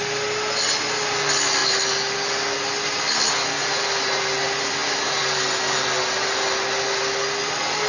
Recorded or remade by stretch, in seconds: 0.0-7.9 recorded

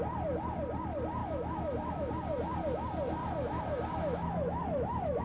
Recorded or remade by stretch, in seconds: 0.0-1.2 recorded; 1.2-2.1 remade; 2.1-3.2 recorded; 3.2-5.2 remade

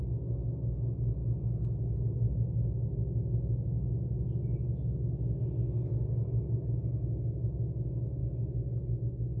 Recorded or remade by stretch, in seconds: 0.0-9.4 recorded

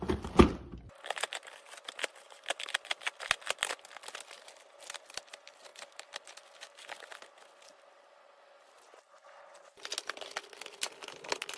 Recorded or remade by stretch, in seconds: 0.0-11.6 recorded

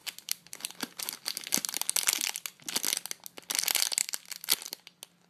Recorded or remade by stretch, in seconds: 0.0-1.0 remade; 1.0-4.0 recorded; 4.0-4.8 remade; 4.8-5.3 recorded

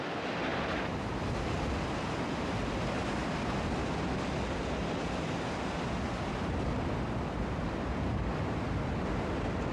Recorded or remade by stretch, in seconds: 0.0-9.7 recorded